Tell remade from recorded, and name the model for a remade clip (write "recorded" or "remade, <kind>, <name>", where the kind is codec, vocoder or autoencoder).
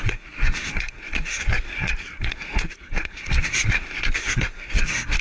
remade, codec, SNAC